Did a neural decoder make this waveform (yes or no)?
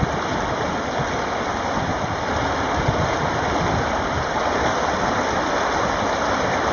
no